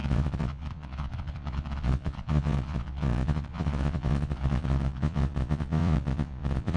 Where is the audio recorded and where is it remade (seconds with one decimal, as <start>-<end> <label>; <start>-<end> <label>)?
0.0-6.8 remade